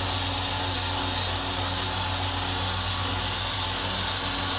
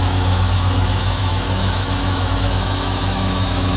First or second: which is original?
first